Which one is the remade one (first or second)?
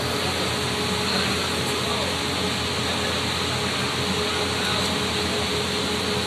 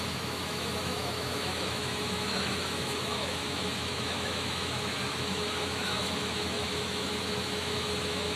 second